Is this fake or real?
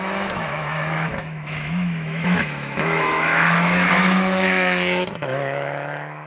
fake